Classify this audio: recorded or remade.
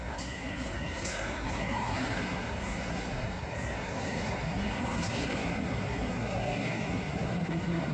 remade